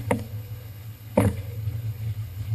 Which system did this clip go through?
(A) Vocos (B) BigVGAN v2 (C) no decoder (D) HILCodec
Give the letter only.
D